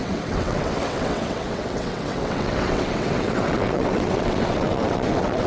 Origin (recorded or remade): remade